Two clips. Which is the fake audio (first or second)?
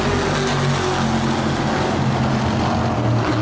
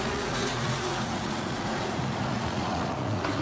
second